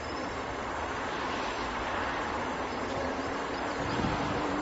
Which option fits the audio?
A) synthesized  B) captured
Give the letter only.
A